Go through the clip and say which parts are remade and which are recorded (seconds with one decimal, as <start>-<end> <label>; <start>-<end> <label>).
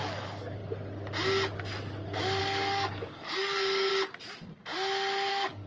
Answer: 0.0-0.6 remade; 0.6-2.4 recorded; 2.4-3.9 remade; 3.9-5.3 recorded; 5.3-5.7 remade